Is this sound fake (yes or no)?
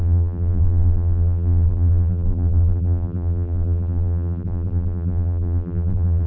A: yes